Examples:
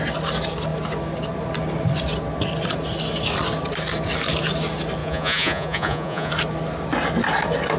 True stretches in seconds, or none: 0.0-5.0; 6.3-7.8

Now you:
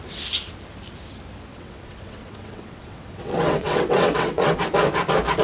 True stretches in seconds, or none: 0.0-1.5; 4.6-5.4